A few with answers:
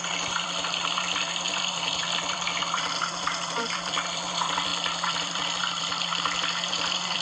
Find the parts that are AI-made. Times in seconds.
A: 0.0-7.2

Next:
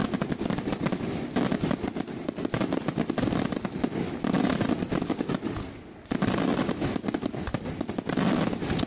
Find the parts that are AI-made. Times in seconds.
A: none

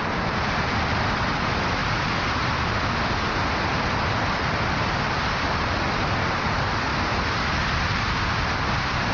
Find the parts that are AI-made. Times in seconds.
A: 0.0-1.8; 5.2-6.9; 7.7-9.1

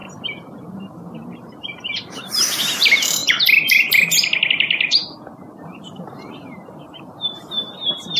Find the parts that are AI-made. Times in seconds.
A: 0.0-3.2; 4.5-5.0; 5.6-8.2

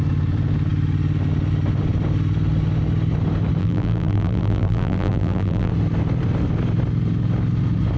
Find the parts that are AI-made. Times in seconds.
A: 3.6-5.7

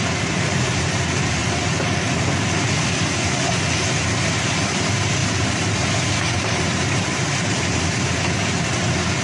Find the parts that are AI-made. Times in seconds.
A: 0.0-1.4; 3.9-5.2; 6.3-9.2

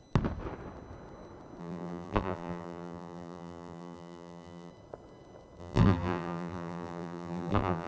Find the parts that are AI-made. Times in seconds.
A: 1.6-4.7; 5.6-7.9

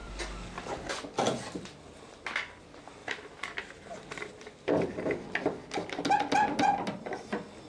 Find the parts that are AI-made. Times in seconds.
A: 3.0-4.3